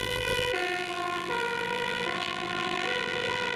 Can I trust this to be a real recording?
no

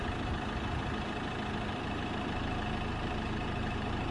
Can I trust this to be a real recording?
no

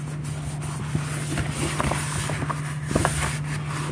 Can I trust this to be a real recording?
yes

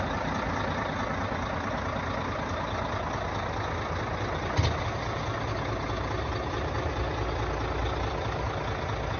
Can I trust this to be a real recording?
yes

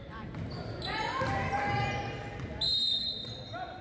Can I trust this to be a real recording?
yes